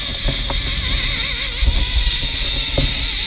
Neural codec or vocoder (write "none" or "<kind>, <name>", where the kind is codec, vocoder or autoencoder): none